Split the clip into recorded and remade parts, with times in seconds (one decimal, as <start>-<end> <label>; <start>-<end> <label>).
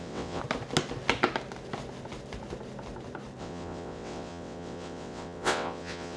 0.0-0.4 remade; 0.4-3.4 recorded; 3.4-6.2 remade